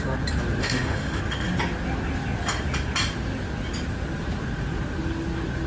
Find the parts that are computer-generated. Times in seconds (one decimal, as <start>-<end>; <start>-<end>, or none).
0.6-1.2